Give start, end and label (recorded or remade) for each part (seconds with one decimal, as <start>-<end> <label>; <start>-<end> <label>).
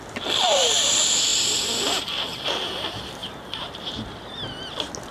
0.0-3.2 recorded; 3.2-4.5 remade; 4.5-5.1 recorded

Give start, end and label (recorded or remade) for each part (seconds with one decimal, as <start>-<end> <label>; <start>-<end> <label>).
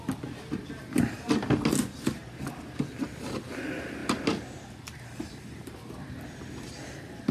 0.0-7.3 recorded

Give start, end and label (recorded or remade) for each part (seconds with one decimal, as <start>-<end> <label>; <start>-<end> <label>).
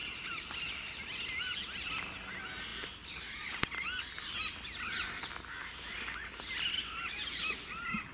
0.0-2.7 recorded; 2.7-5.2 remade; 5.2-8.1 recorded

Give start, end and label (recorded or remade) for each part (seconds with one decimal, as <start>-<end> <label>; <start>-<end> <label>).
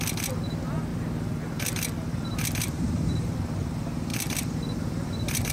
0.0-0.9 recorded; 0.9-3.5 remade; 3.5-4.1 recorded; 4.1-5.5 remade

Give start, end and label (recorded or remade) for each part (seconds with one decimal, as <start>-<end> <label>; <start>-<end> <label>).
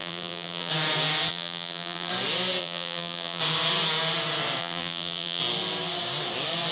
0.0-0.7 remade; 0.7-1.3 recorded; 1.3-2.1 remade; 2.1-2.6 recorded; 2.6-3.4 remade; 3.4-4.6 recorded; 4.6-5.4 remade; 5.4-6.7 recorded